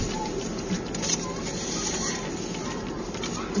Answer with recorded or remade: recorded